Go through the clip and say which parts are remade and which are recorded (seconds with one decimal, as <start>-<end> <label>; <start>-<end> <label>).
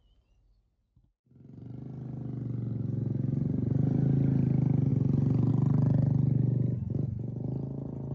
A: 0.0-8.1 recorded